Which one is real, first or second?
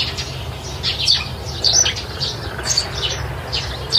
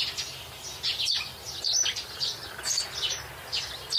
second